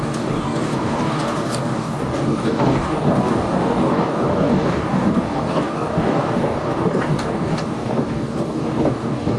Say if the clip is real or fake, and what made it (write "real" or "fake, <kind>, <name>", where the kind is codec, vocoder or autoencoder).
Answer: fake, codec, DAC